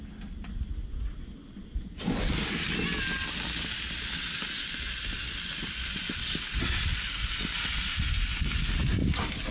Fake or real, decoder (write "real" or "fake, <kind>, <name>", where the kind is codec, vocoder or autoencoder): real